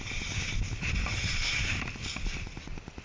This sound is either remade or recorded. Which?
recorded